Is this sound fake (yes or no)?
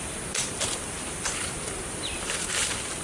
yes